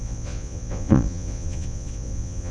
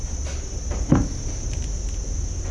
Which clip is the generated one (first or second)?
first